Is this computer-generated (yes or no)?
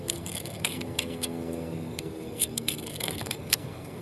yes